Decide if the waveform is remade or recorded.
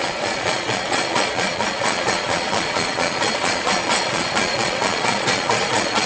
remade